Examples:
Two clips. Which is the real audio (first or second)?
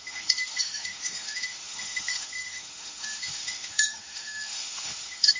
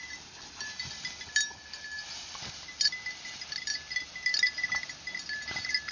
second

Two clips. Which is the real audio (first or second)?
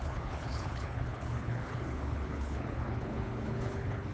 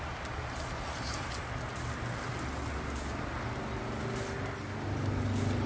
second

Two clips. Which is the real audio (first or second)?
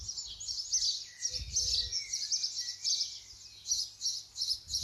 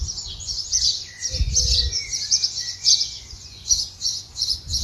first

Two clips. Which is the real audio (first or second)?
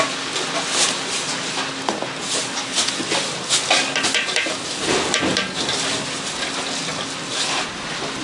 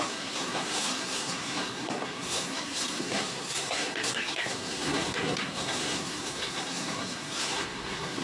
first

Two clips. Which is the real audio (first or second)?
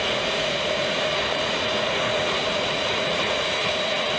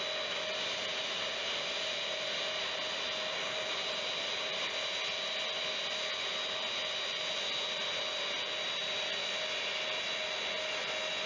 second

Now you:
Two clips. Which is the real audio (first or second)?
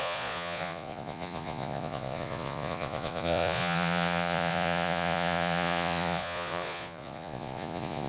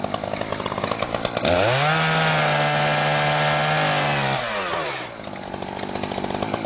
second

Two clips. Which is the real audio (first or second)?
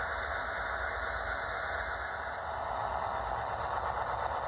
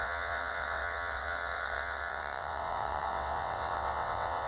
first